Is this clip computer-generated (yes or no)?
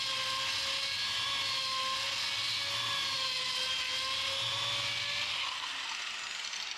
no